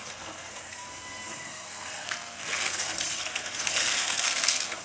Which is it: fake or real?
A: fake